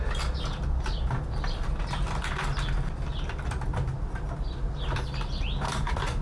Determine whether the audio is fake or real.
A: real